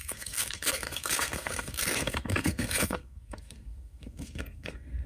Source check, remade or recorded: remade